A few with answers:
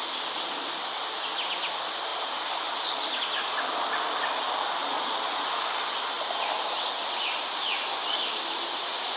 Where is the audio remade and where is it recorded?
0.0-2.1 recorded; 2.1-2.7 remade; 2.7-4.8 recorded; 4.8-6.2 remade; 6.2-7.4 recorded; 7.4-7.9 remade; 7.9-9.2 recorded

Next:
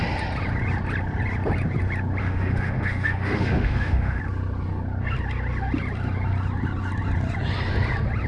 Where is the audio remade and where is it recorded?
0.0-2.2 recorded; 2.2-4.2 remade; 4.2-8.3 recorded

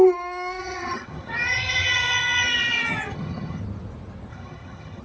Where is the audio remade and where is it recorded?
0.0-0.6 recorded; 0.6-3.6 remade; 3.6-4.3 recorded; 4.3-5.0 remade

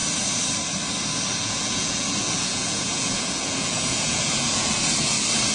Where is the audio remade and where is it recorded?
0.0-1.4 recorded; 1.4-4.7 remade; 4.7-5.5 recorded

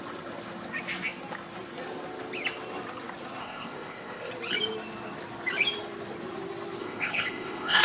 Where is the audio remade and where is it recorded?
0.0-3.4 recorded; 3.4-4.3 remade; 4.3-6.8 recorded; 6.8-7.8 remade

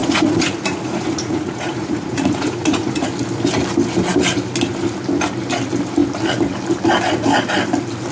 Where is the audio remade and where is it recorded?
0.0-3.1 remade; 3.1-8.1 recorded

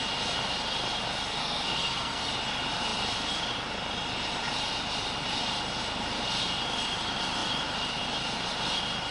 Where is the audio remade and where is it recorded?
0.0-1.4 recorded; 1.4-2.3 remade; 2.3-9.1 recorded

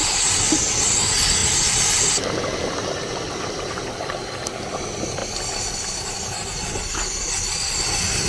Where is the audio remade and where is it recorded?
0.0-8.3 recorded